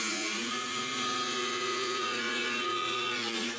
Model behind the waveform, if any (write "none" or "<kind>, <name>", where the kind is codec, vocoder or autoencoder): vocoder, Vocos